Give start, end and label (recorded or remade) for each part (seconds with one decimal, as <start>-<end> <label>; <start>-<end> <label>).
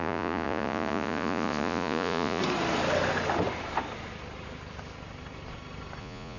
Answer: 0.0-2.4 remade; 2.4-6.0 recorded; 6.0-6.4 remade